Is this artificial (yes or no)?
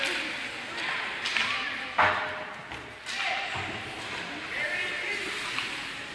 no